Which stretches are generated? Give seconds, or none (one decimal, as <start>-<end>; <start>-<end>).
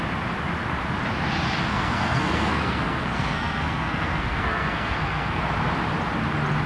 1.7-5.4